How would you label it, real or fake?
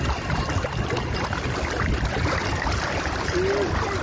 real